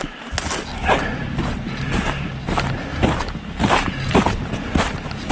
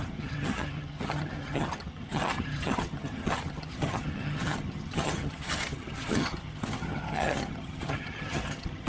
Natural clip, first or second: first